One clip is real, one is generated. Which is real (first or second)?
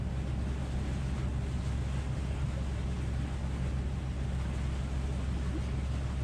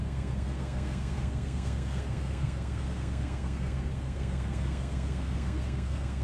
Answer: first